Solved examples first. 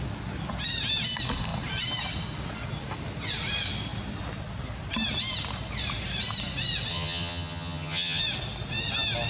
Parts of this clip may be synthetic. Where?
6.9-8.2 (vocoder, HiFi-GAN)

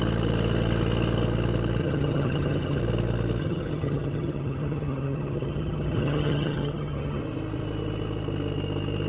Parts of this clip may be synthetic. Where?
1.8-2.8 (vocoder, HiFi-GAN); 3.4-7.2

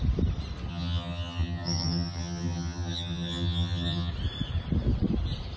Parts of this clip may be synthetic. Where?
0.7-4.1 (vocoder, HiFi-GAN)

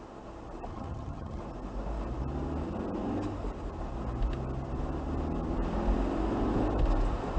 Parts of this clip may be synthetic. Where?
0.7-1.4 (vocoder, HiFi-GAN)

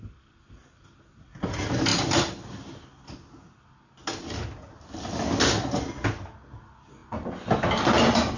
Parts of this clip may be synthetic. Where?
none

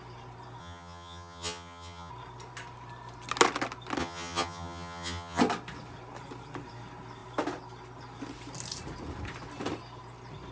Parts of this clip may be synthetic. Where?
0.6-2.1 (vocoder, HiFi-GAN); 4.0-5.4